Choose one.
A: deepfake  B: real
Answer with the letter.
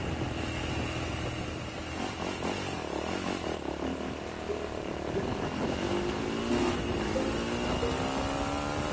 B